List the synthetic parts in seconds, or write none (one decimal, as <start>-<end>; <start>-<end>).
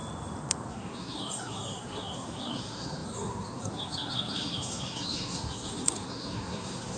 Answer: 0.7-7.0